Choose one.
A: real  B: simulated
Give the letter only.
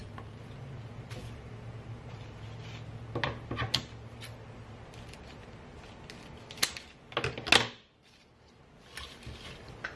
A